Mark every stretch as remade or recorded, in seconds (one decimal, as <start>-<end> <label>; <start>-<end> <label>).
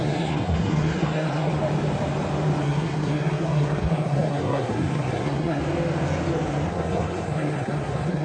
0.0-1.5 remade; 1.5-2.6 recorded; 2.6-5.6 remade; 5.6-6.7 recorded; 6.7-8.2 remade